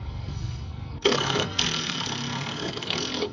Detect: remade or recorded remade